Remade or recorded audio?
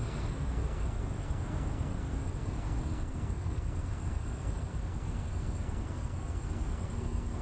remade